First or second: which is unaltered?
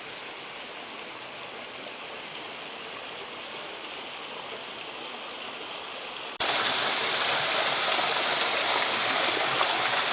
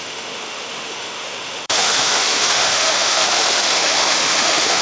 first